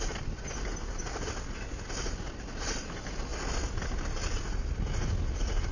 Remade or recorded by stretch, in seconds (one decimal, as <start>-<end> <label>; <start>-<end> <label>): 0.0-5.7 recorded